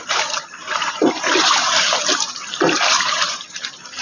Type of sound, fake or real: fake